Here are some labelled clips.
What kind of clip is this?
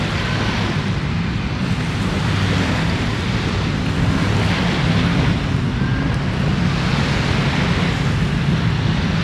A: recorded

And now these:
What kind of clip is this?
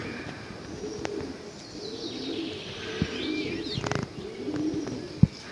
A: recorded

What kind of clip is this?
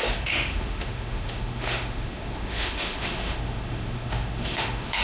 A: remade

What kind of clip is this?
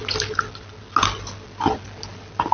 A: recorded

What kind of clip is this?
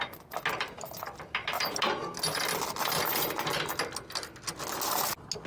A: recorded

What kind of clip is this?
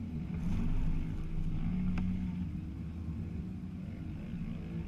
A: recorded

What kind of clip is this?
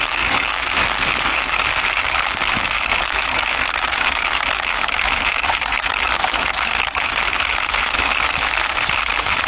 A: remade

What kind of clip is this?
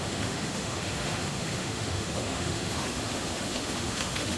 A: remade